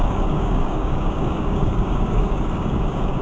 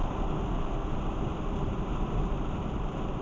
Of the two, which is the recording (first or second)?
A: second